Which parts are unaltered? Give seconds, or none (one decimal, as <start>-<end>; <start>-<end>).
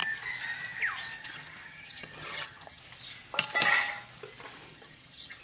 0.0-1.2; 2.8-4.7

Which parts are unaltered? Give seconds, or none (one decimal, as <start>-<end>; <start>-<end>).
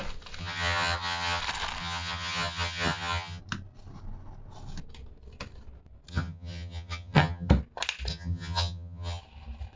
0.0-0.4; 1.4-1.8; 3.4-6.1; 7.5-8.1; 9.2-9.8